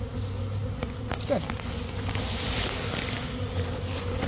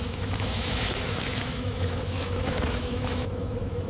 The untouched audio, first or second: first